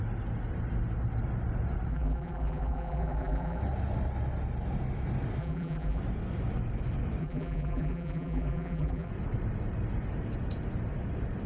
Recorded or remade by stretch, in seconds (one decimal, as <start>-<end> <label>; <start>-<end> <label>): 0.0-1.9 recorded; 1.9-3.6 remade; 3.6-5.4 recorded; 5.4-6.0 remade; 6.0-7.2 recorded; 7.2-9.1 remade; 9.1-11.5 recorded